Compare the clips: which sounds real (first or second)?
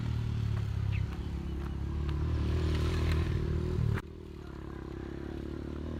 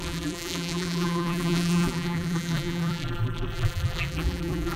first